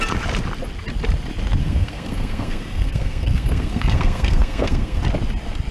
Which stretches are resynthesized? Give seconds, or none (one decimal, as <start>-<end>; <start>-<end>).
1.6-5.0